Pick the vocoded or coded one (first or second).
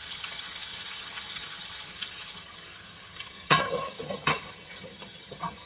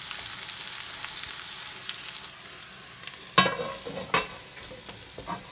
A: first